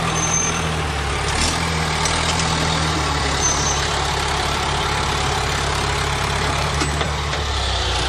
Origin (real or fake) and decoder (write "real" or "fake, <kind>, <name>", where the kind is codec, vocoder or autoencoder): fake, vocoder, BigVGAN v2